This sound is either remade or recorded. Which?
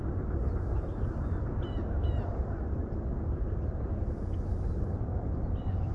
recorded